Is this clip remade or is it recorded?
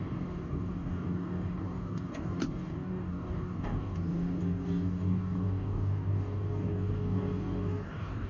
remade